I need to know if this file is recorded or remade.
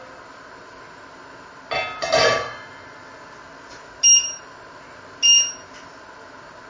recorded